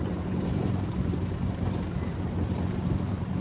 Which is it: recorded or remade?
remade